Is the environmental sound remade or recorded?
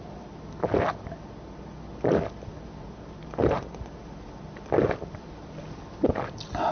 recorded